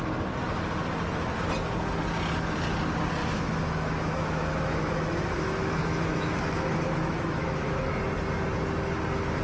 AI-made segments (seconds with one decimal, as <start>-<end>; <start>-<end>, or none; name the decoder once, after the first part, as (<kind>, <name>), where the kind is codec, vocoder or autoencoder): 3.2-8.0 (autoencoder, DAC-VAE)